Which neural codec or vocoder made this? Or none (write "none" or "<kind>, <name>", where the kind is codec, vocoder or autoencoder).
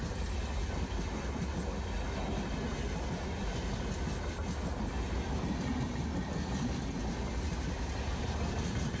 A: none